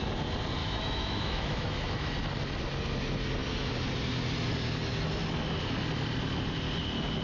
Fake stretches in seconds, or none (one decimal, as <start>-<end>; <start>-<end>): 0.6-2.1